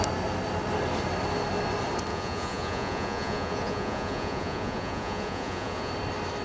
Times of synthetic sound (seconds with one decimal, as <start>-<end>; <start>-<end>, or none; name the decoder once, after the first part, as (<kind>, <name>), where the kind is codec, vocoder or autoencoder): 2.1-5.9 (vocoder, Vocos)